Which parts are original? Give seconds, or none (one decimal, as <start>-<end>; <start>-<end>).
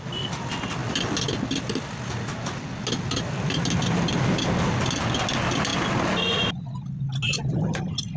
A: 0.0-8.2